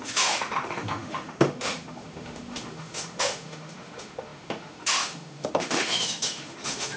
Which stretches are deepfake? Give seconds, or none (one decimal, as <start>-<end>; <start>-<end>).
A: 0.0-7.0